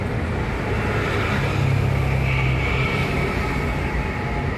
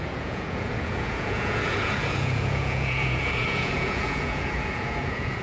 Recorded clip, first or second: first